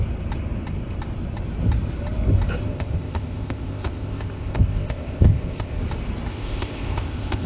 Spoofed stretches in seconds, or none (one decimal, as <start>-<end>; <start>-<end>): 2.7-5.8; 6.3-7.5